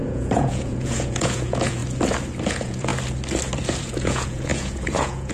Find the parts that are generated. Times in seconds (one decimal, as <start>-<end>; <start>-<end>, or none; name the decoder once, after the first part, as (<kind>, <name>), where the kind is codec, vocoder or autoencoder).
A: 0.0-1.8 (vocoder, Vocos); 2.5-2.9; 3.8-5.3